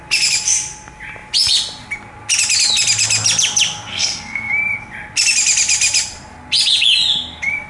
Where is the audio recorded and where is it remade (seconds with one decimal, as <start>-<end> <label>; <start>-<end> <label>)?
0.0-3.9 recorded; 3.9-4.5 remade; 4.5-7.7 recorded